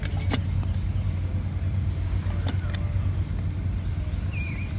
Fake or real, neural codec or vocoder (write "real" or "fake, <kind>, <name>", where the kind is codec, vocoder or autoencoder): real